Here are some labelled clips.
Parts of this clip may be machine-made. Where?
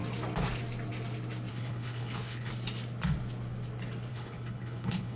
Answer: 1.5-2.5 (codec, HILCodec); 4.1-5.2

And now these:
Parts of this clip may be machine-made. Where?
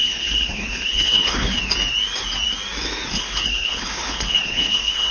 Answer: 0.0-1.6 (codec, HILCodec); 3.1-5.1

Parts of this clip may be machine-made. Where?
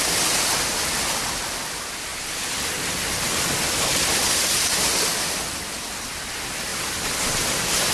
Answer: none